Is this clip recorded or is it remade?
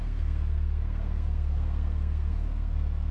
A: remade